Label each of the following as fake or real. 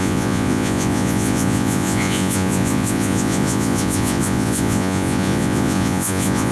fake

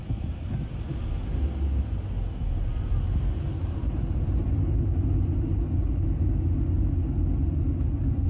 real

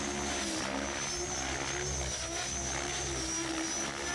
real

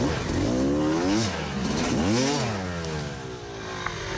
real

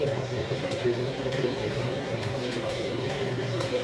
fake